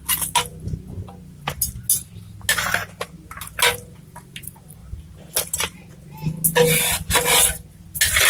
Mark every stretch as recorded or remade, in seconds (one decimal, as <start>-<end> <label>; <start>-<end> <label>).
0.0-8.3 recorded